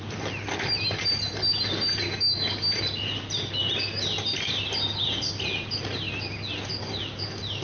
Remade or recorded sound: recorded